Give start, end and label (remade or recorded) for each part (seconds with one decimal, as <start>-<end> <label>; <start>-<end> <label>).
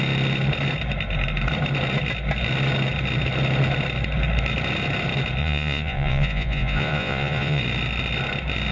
0.0-5.4 recorded; 5.4-7.6 remade; 7.6-8.7 recorded